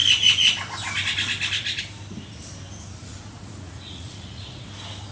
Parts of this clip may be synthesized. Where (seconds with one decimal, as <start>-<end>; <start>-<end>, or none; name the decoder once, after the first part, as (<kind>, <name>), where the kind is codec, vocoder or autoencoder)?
3.0-4.6 (vocoder, Vocos)